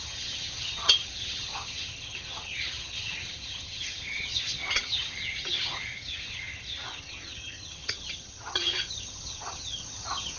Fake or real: fake